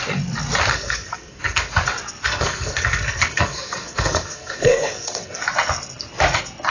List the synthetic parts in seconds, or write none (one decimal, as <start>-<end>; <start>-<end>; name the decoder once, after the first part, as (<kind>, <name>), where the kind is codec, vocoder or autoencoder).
0.7-1.7 (codec, SNAC); 2.2-5.4